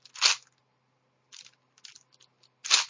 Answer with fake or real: real